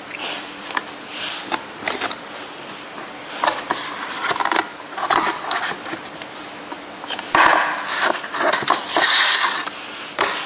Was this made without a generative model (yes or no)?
yes